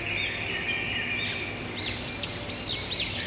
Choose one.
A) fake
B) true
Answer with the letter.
B